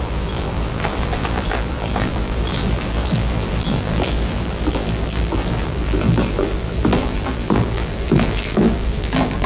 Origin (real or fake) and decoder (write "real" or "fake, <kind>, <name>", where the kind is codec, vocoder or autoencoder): fake, vocoder, BigVGAN v2